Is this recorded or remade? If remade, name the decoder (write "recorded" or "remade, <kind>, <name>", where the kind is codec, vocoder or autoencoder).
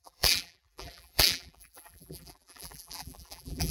remade, vocoder, BigVGAN v2